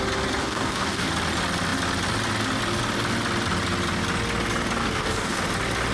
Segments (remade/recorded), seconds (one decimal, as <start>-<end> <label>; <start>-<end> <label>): 0.0-0.4 recorded; 0.4-1.1 remade; 1.1-4.8 recorded; 4.8-5.4 remade; 5.4-5.9 recorded